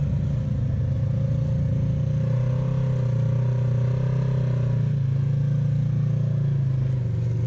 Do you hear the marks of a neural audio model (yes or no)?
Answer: no